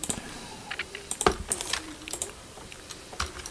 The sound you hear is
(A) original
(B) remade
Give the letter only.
B